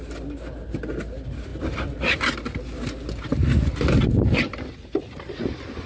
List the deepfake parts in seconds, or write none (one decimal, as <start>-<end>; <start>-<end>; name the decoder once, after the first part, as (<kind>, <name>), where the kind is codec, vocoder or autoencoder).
none